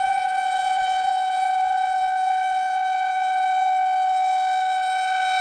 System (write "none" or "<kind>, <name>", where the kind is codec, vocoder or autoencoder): vocoder, Vocos